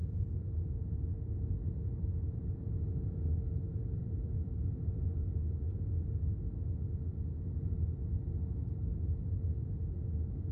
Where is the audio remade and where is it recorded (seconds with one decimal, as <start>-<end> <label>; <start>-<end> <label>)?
0.0-4.0 recorded; 4.0-5.2 remade; 5.2-10.5 recorded